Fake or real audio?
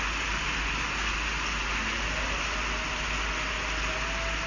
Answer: real